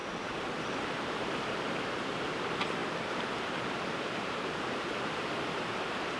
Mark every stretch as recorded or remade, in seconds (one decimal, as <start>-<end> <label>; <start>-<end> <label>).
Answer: 0.0-0.8 recorded; 0.8-6.2 remade